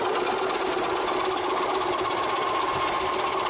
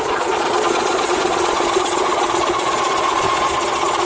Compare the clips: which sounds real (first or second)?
first